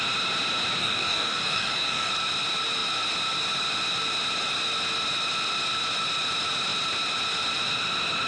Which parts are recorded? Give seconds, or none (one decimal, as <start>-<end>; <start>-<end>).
0.0-0.8; 2.1-8.3